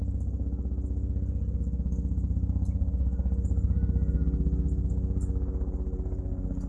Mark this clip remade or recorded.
recorded